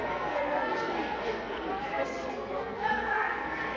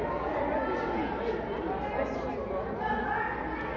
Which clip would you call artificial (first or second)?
first